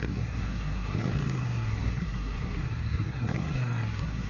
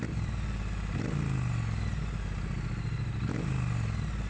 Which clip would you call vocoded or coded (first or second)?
first